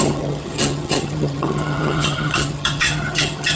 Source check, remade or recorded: remade